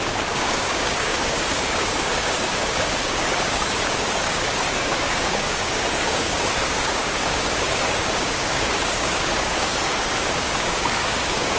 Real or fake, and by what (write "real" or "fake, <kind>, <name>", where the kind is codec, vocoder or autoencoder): fake, codec, DAC